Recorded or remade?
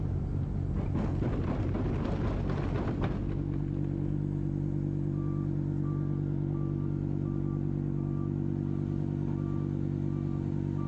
recorded